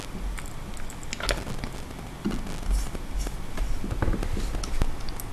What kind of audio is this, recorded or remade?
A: recorded